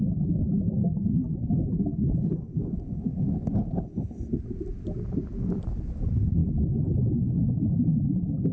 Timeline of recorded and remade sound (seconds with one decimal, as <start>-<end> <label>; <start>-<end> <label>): 0.0-8.5 recorded